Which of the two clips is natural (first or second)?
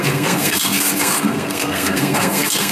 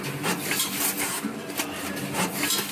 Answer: second